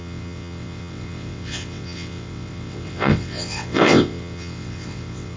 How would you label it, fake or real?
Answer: fake